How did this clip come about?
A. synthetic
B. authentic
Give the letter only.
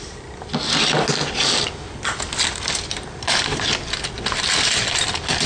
B